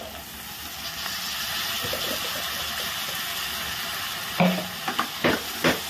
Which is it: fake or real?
real